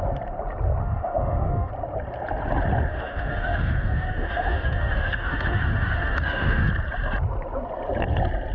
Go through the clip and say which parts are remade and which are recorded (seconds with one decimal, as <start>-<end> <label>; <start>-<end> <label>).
0.0-0.8 recorded; 0.8-1.7 remade; 1.7-2.9 recorded; 2.9-6.7 remade; 6.7-8.5 recorded